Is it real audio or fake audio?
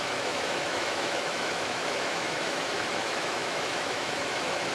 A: fake